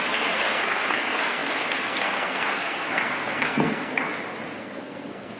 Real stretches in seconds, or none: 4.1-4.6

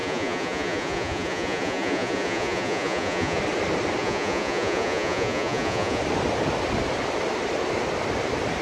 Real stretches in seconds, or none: 3.4-4.0; 6.0-8.6